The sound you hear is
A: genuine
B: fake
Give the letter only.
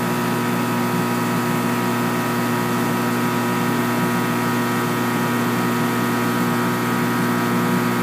A